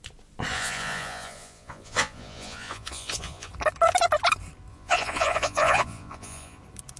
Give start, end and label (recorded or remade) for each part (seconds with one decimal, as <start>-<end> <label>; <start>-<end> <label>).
0.0-0.5 recorded; 0.5-3.5 remade; 3.5-4.7 recorded; 4.7-6.6 remade; 6.6-7.0 recorded